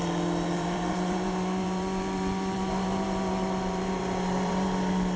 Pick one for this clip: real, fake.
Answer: fake